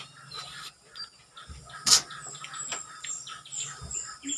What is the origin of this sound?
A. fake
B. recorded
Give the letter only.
B